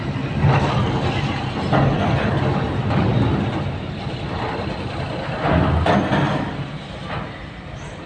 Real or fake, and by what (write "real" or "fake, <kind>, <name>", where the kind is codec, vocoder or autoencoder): real